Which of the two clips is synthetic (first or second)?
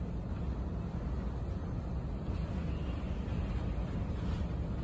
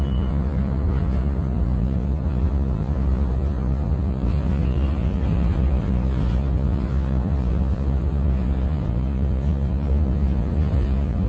second